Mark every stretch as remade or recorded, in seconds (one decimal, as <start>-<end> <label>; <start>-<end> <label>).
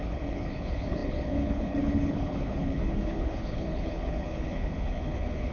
0.0-5.5 remade